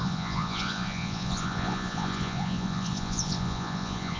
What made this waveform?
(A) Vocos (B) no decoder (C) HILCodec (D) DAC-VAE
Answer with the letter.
A